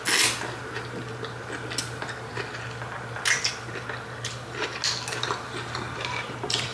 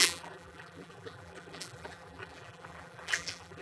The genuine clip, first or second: first